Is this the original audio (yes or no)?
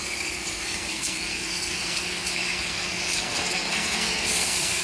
no